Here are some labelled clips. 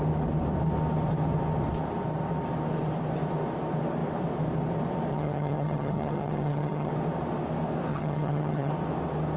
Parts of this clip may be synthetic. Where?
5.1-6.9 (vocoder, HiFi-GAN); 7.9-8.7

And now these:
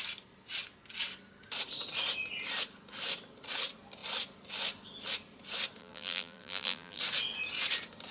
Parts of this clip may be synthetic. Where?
5.8-7.0 (vocoder, BigVGAN v2)

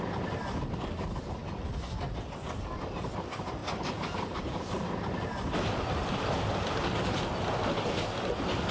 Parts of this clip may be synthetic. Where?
none

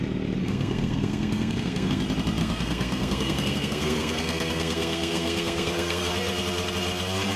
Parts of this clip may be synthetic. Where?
0.4-2.0 (codec, SNAC); 2.4-6.1

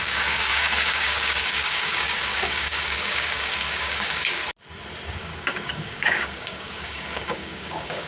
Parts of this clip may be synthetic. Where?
0.0-4.4 (codec, DAC); 5.1-8.1

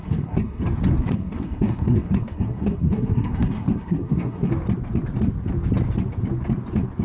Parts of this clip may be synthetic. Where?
0.0-0.6 (codec, SNAC); 1.0-4.5

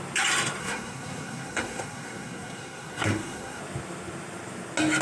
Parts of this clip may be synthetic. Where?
0.6-3.6 (codec, SNAC)

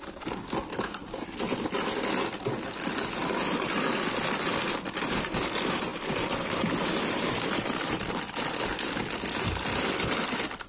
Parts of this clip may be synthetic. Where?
5.9-8.2 (vocoder, BigVGAN v2)